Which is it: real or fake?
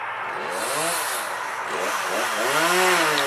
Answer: real